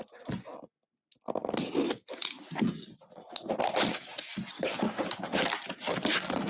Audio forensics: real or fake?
real